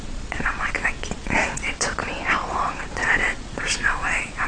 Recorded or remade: remade